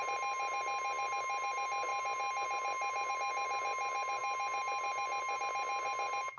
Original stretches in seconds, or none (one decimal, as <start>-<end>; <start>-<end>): 0.0-6.4